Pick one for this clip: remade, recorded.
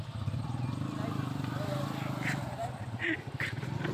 recorded